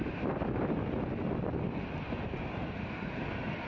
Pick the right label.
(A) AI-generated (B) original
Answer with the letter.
B